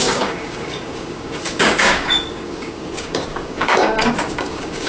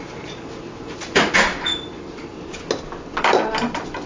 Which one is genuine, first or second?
second